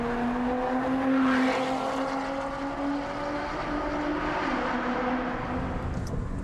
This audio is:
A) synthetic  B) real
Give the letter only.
B